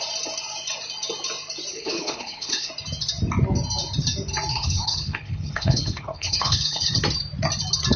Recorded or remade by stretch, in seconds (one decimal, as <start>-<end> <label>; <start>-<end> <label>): 0.0-1.7 recorded; 1.7-2.7 remade; 2.7-4.5 recorded; 4.5-7.0 remade; 7.0-8.0 recorded